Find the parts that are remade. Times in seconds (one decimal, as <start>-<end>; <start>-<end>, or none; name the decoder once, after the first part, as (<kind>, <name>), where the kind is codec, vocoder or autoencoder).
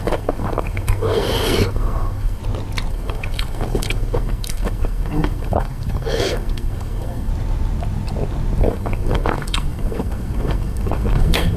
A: 0.0-2.4 (codec, SNAC); 2.9-7.3; 8.6-11.6